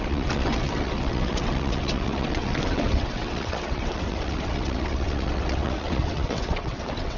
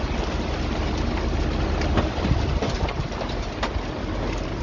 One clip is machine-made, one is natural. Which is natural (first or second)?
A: second